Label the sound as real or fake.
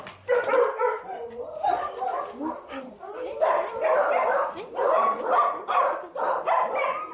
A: fake